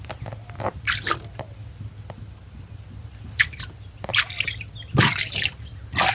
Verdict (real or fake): real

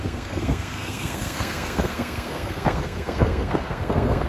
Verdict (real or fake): fake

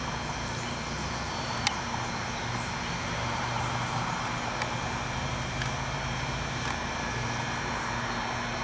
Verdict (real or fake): fake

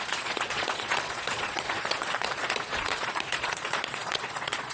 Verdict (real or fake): fake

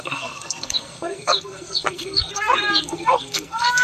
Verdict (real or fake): fake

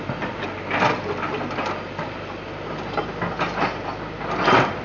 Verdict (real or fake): real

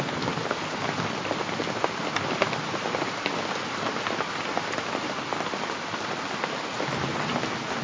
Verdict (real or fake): real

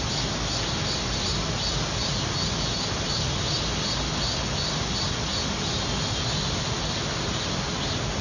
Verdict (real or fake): real